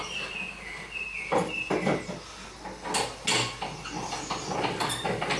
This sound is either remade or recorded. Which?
recorded